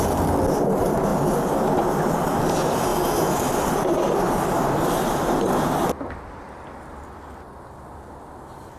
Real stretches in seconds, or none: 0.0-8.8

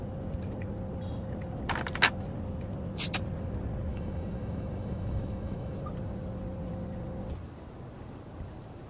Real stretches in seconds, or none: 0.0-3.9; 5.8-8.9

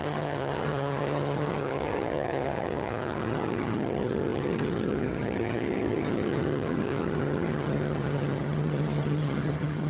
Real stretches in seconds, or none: none